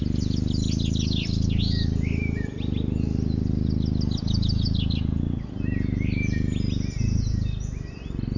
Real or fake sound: real